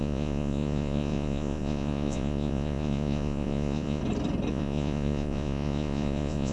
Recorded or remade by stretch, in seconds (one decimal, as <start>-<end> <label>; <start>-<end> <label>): 0.0-4.0 remade; 4.0-4.5 recorded; 4.5-6.5 remade